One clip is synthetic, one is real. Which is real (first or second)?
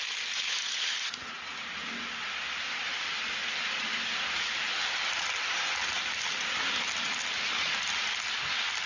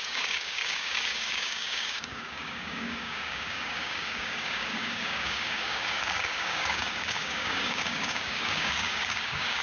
first